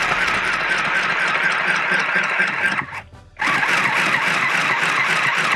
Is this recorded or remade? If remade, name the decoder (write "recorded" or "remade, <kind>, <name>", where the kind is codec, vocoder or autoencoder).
recorded